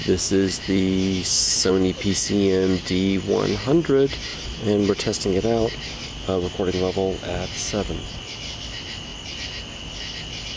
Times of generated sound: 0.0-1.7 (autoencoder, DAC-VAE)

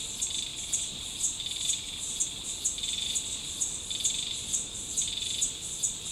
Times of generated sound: none

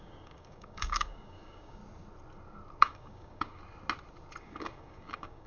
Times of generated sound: 0.0-1.8 (codec, DAC); 2.8-3.6; 4.4-5.5

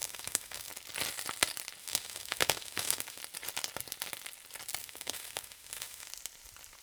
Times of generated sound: 0.0-0.7 (autoencoder, DAC-VAE); 1.8-3.2; 4.8-6.1

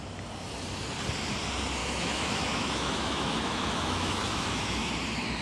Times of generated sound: 1.8-4.9 (autoencoder, DAC-VAE)

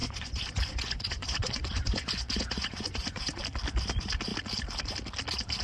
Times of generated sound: 0.0-3.4 (vocoder, Vocos)

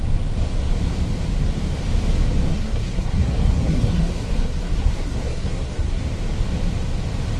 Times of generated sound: 2.5-6.0 (codec, SNAC)

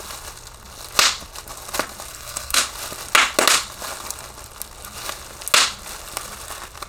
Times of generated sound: 2.1-2.6 (codec, SNAC)